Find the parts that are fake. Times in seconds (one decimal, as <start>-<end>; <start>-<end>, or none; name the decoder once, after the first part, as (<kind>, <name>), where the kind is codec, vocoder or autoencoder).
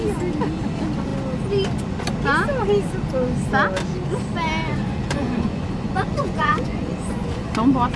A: 4.8-7.6 (vocoder, Vocos)